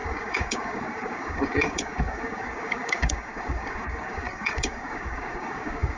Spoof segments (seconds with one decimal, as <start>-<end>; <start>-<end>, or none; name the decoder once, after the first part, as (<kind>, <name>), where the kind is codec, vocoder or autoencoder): 0.0-6.0 (codec, DAC)